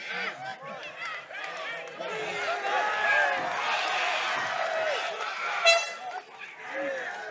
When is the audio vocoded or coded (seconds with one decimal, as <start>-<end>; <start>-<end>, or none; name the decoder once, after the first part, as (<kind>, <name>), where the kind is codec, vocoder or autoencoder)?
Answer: none